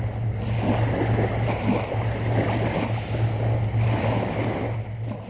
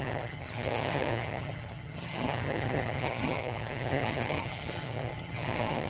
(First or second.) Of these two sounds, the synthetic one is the second